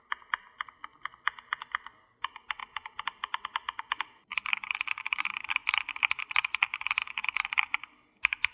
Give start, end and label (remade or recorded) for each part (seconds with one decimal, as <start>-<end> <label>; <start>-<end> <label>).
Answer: 0.0-8.5 recorded